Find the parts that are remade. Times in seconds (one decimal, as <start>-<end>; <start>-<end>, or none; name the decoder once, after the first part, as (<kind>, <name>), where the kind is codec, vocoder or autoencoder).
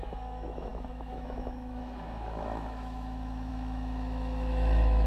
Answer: 0.0-5.1 (autoencoder, DAC-VAE)